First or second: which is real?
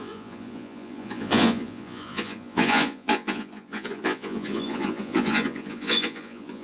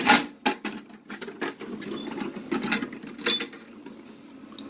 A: second